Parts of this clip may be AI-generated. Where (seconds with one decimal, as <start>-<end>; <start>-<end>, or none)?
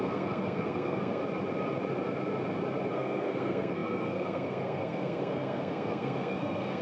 0.0-1.2; 2.9-6.8